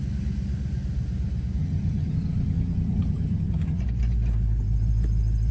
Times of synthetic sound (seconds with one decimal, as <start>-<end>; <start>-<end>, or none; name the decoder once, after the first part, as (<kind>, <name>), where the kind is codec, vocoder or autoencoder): 1.6-3.8 (vocoder, HiFi-GAN)